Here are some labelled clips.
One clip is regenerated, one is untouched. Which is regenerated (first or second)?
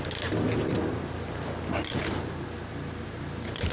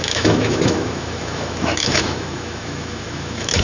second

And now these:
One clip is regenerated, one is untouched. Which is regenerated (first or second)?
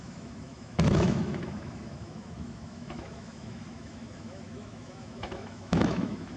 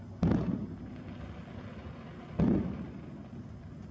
first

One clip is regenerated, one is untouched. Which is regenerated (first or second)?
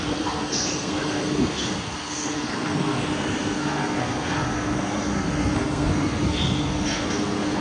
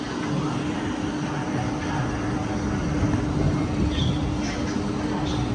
first